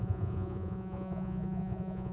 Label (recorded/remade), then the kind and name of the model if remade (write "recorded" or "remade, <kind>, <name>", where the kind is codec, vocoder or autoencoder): remade, vocoder, Vocos